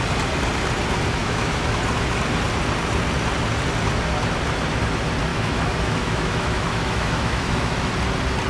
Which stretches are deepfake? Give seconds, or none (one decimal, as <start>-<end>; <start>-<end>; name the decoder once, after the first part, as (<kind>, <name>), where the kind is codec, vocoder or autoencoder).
1.2-1.8 (autoencoder, DAC-VAE); 5.3-7.9